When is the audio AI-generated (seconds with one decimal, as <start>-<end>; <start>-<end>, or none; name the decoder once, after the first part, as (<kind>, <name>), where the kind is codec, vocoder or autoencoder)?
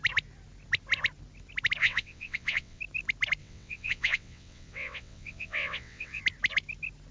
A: 1.8-2.8 (vocoder, WaveNeXt); 3.4-6.2